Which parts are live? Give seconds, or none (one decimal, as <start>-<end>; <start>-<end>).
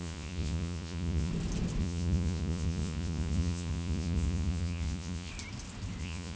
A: 1.3-1.8; 5.3-6.0